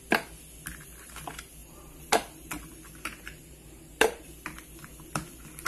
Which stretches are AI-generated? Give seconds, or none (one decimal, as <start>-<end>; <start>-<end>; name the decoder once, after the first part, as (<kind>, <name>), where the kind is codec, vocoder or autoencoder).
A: 1.6-4.3 (vocoder, BigVGAN v2)